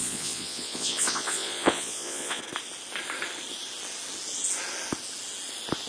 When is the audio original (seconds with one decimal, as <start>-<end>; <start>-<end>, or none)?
2.4-5.9